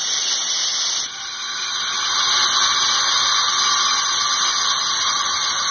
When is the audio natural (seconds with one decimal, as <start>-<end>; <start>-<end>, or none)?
0.0-5.7